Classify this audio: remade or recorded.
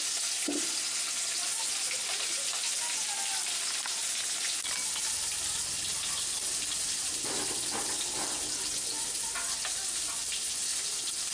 recorded